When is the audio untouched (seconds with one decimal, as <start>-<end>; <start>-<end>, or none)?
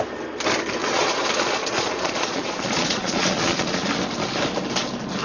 0.0-0.8; 3.9-5.2